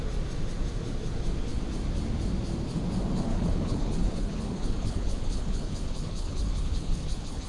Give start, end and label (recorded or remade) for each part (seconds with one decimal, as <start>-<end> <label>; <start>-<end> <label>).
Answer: 0.0-3.3 recorded; 3.3-7.5 remade

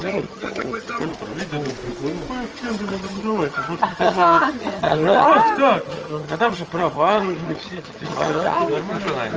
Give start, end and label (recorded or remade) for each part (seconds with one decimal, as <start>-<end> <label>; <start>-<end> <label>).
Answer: 0.0-1.1 remade; 1.1-2.5 recorded; 2.5-5.3 remade; 5.3-5.8 recorded; 5.8-8.6 remade; 8.6-9.4 recorded

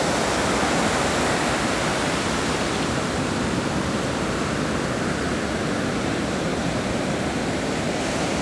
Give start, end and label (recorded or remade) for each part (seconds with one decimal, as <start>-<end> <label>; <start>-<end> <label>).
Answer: 0.0-1.9 recorded; 1.9-4.6 remade; 4.6-6.5 recorded; 6.5-8.4 remade

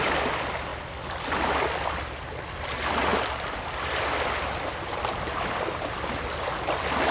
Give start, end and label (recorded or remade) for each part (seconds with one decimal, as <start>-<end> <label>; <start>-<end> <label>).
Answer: 0.0-7.1 recorded

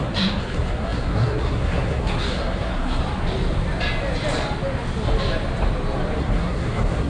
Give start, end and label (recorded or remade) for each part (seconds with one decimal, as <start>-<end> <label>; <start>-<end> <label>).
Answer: 0.0-3.0 remade; 3.0-6.2 recorded; 6.2-7.1 remade